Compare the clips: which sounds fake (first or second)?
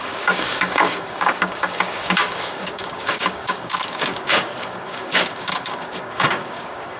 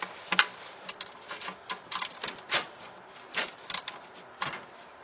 first